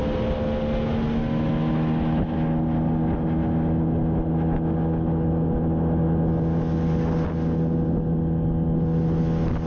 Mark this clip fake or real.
real